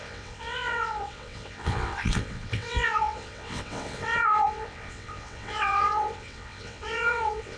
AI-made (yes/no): yes